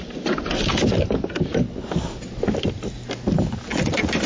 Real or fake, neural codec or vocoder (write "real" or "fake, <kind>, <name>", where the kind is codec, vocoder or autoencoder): real